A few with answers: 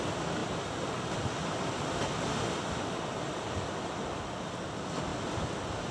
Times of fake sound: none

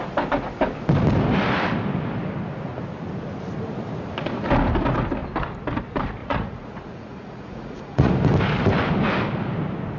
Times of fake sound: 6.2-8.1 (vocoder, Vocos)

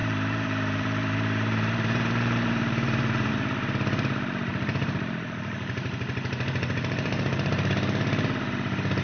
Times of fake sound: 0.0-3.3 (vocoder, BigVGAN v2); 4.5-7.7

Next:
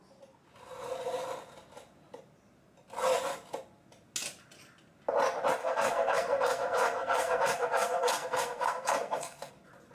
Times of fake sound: 5.6-9.5 (codec, SNAC)

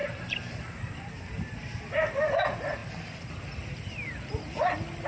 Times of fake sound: 0.0-1.2 (vocoder, BigVGAN v2)